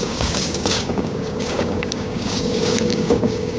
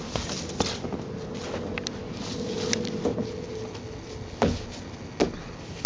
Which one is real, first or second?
second